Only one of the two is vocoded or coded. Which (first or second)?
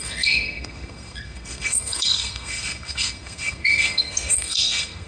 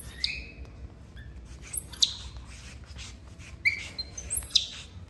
first